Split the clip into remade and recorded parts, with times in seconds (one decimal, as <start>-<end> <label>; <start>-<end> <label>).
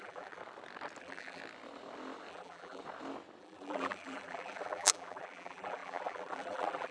0.0-0.4 remade; 0.4-1.0 recorded; 1.0-1.4 remade; 1.4-2.3 recorded; 2.3-2.8 remade; 2.8-3.4 recorded; 3.4-6.9 remade